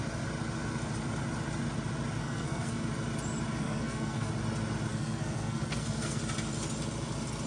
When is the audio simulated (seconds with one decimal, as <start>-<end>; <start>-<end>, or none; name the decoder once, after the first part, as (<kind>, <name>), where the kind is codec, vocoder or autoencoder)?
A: 2.2-2.8 (codec, SNAC); 3.6-4.3; 4.9-6.2